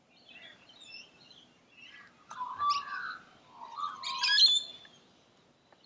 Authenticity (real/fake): real